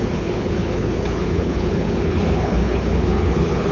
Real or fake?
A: fake